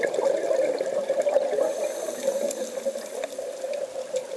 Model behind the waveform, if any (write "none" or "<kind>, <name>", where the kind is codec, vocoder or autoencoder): none